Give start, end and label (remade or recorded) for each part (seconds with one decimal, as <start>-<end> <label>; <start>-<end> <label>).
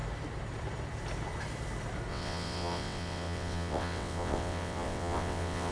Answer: 0.0-2.1 recorded; 2.1-5.7 remade